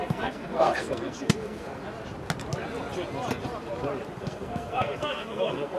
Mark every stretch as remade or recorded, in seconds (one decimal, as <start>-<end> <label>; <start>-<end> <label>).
0.0-1.8 remade; 1.8-4.2 recorded; 4.2-5.8 remade